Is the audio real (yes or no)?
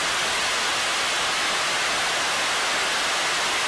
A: yes